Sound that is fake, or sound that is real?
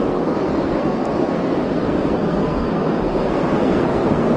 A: fake